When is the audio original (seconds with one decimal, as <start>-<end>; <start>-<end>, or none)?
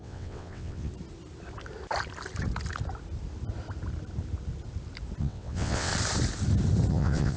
0.9-5.2; 5.9-6.9